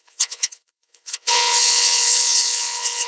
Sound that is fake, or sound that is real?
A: fake